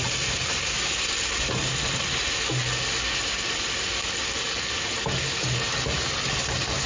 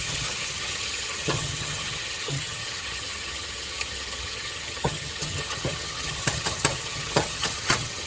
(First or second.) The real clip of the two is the first